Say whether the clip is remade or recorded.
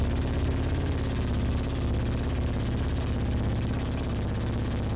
recorded